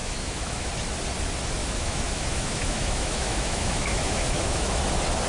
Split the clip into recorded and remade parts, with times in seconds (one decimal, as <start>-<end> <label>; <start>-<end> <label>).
0.0-0.7 remade; 0.7-1.6 recorded; 1.6-4.8 remade; 4.8-5.3 recorded